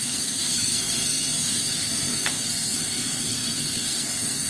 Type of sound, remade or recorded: remade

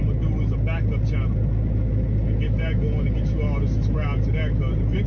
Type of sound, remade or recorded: recorded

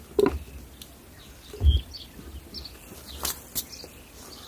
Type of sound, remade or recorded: recorded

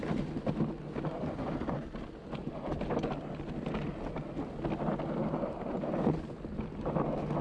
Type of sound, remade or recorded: recorded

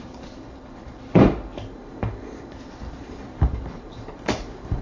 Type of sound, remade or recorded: remade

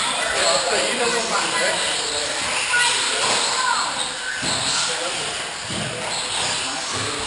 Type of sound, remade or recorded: recorded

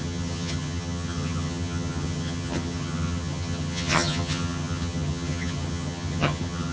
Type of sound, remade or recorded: remade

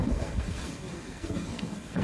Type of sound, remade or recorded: remade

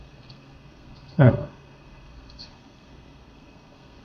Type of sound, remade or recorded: remade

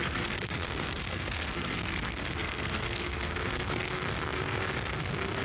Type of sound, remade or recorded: remade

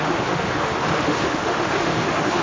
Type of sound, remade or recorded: remade